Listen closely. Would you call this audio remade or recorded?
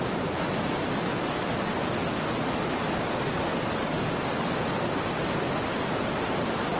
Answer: recorded